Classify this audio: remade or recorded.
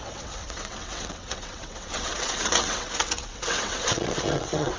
remade